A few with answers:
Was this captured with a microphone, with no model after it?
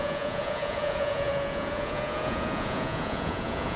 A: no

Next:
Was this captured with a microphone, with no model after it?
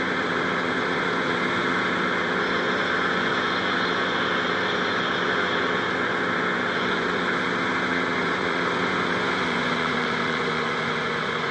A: no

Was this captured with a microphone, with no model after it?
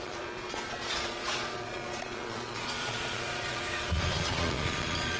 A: no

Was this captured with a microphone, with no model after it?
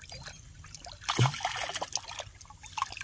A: yes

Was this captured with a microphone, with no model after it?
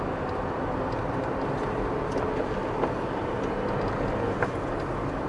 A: yes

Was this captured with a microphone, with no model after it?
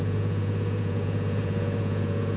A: no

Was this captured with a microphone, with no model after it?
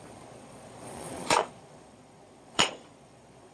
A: no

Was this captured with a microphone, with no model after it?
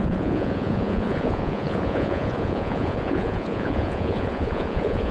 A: no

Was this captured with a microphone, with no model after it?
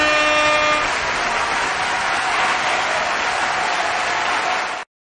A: yes